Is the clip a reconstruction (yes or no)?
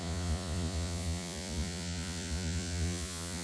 yes